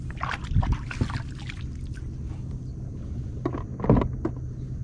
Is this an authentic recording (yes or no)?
yes